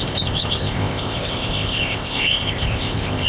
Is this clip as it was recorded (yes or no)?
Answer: no